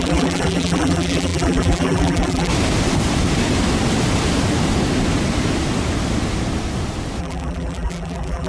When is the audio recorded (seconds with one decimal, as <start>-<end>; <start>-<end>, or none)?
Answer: 2.5-7.2